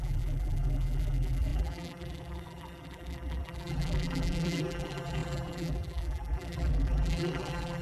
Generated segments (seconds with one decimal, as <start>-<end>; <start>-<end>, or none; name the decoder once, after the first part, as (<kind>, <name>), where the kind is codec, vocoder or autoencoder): 0.0-7.8 (vocoder, BigVGAN v2)